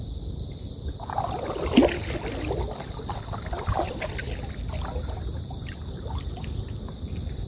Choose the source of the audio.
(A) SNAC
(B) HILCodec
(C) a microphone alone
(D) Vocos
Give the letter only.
C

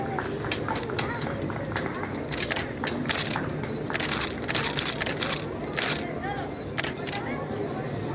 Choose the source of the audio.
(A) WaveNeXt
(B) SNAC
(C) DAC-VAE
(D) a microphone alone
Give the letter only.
D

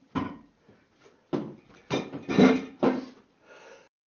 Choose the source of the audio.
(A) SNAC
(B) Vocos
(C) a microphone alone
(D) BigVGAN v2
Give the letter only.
C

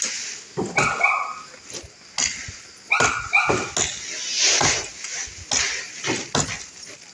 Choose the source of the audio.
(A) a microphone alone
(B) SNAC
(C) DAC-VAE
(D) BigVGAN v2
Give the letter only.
A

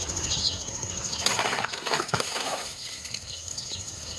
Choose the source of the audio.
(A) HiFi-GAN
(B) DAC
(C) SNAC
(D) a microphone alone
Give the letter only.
C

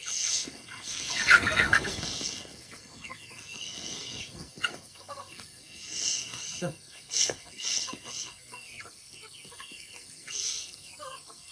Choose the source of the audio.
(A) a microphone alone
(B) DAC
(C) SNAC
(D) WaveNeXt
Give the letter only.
C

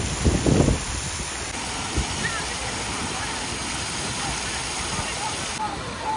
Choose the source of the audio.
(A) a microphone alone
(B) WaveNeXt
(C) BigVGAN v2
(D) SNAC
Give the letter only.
A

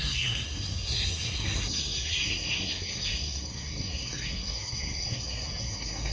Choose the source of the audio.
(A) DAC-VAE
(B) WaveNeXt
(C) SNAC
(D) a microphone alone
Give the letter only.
C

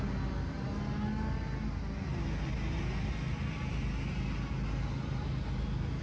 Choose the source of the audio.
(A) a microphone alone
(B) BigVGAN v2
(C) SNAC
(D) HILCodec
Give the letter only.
A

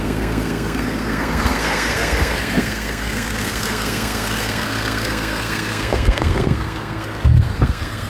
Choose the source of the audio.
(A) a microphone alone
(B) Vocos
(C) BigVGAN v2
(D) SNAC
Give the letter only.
D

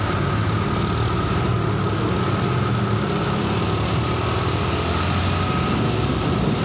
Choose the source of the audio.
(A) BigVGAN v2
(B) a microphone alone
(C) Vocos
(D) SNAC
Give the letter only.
B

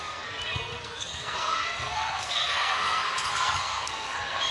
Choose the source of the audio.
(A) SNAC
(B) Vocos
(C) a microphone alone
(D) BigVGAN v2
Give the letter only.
A